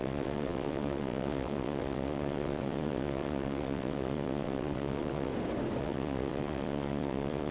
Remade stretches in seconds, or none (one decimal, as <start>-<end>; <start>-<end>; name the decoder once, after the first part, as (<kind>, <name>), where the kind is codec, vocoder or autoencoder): 0.0-5.3 (vocoder, WaveNeXt); 5.8-7.5